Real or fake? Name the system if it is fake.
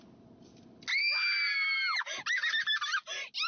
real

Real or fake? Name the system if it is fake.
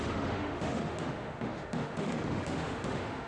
fake, autoencoder, DAC-VAE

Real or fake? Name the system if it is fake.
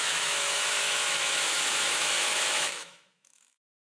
fake, autoencoder, DAC-VAE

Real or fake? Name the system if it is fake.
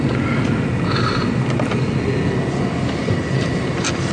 real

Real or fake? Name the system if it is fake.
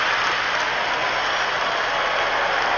real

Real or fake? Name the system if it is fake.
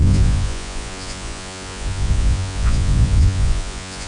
fake, vocoder, Vocos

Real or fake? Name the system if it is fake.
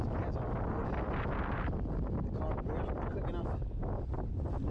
real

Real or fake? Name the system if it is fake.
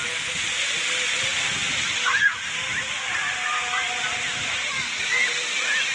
real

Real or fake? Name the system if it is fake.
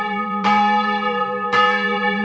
fake, vocoder, BigVGAN v2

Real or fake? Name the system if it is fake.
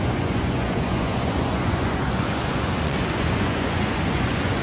fake, vocoder, Vocos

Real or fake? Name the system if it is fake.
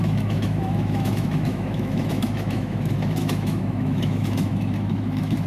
fake, autoencoder, DAC-VAE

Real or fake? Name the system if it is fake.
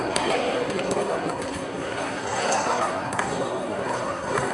fake, codec, SNAC